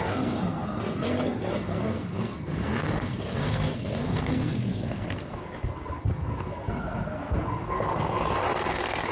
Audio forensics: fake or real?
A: fake